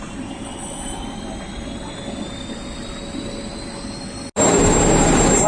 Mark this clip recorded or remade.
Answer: recorded